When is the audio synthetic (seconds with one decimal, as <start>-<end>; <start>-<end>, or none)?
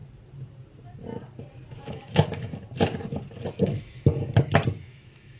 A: 1.9-2.5; 3.5-4.1; 4.8-5.4